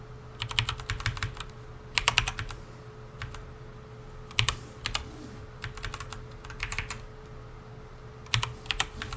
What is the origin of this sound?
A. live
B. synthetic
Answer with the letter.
A